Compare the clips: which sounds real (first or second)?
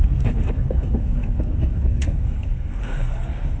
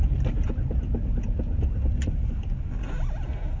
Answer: second